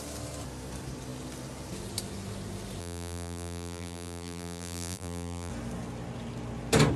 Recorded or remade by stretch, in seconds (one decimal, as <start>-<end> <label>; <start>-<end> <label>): 0.0-2.8 recorded; 2.8-5.5 remade; 5.5-7.0 recorded

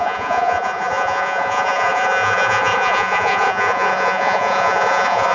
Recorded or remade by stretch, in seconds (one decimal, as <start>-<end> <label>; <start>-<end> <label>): 0.0-5.3 remade

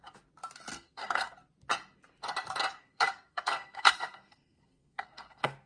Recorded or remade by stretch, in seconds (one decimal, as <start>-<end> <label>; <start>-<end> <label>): 0.0-0.7 recorded; 0.7-1.3 remade; 1.3-2.8 recorded; 2.8-5.7 remade

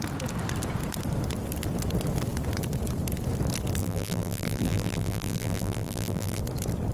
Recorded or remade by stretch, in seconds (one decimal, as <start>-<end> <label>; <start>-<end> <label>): 0.0-3.8 recorded; 3.8-6.4 remade; 6.4-6.9 recorded

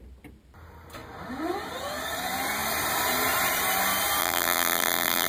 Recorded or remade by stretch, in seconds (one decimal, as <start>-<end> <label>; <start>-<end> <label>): 0.0-4.2 recorded; 4.2-5.3 remade

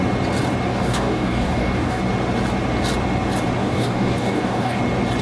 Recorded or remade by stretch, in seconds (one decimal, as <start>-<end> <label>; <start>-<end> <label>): 0.0-0.7 recorded; 0.7-2.0 remade; 2.0-3.6 recorded; 3.6-4.8 remade; 4.8-5.2 recorded